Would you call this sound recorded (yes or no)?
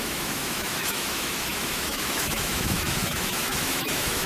no